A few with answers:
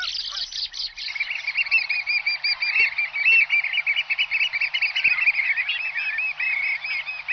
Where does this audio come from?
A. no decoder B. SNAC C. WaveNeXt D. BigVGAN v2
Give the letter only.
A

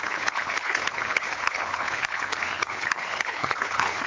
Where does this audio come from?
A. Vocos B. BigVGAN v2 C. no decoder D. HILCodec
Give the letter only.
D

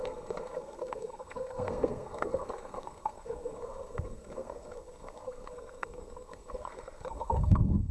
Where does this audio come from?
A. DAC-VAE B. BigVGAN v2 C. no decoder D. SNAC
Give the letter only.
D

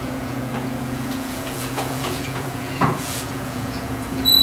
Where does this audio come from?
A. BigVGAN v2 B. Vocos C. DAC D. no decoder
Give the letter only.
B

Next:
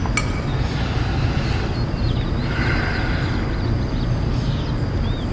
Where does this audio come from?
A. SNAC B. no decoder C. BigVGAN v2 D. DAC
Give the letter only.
B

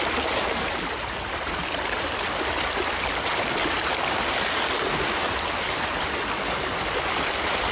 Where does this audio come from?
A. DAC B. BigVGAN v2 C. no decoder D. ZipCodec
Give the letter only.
C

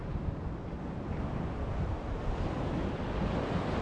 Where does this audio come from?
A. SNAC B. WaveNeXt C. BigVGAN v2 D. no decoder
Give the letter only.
D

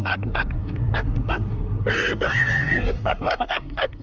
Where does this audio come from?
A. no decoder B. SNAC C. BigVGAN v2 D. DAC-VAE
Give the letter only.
B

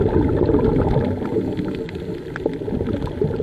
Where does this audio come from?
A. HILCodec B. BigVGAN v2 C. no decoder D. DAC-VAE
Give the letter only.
C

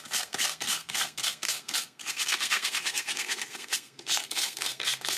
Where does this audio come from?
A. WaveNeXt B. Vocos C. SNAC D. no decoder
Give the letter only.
C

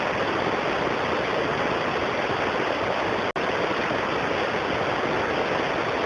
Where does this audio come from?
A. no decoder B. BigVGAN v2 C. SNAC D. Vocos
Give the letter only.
A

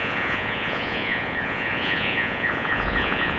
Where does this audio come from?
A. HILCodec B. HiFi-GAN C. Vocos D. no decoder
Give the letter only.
C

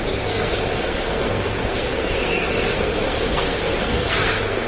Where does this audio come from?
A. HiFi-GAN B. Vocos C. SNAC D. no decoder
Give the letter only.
C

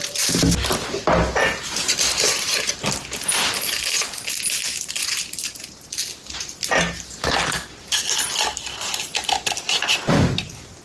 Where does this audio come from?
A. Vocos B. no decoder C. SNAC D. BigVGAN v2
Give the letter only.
B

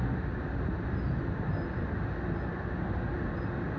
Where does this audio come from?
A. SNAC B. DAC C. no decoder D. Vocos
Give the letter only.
C